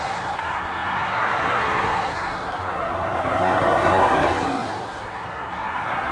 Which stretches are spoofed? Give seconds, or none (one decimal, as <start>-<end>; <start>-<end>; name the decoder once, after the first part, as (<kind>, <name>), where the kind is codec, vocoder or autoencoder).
0.0-6.1 (codec, SNAC)